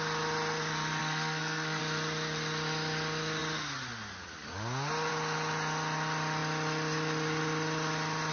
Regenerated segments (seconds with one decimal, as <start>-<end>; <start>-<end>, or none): 1.0-1.8